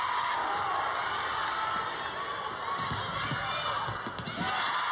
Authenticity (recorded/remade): recorded